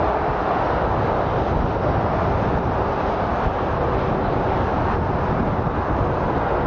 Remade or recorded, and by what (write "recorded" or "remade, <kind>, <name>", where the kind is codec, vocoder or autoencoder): recorded